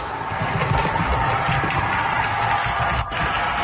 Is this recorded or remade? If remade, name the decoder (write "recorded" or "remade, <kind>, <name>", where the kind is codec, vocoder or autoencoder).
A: recorded